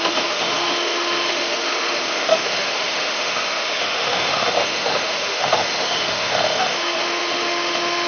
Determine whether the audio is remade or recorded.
remade